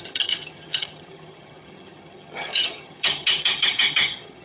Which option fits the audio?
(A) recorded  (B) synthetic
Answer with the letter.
B